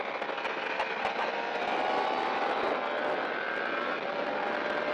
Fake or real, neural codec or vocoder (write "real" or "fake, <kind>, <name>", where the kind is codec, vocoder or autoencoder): real